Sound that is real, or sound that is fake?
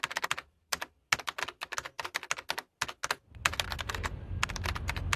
real